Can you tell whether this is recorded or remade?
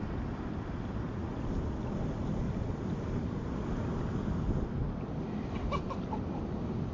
recorded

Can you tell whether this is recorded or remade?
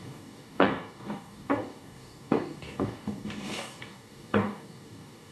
remade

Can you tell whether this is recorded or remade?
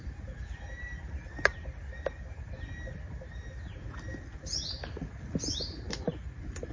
recorded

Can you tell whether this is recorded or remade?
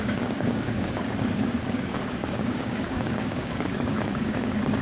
remade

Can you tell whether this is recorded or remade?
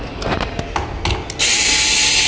recorded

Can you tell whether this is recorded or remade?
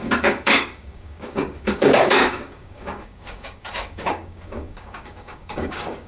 remade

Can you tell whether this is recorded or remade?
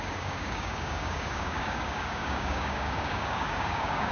remade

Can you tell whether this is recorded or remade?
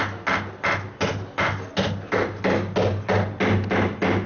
recorded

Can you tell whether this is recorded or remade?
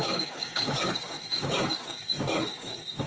remade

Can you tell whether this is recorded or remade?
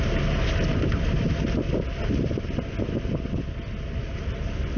recorded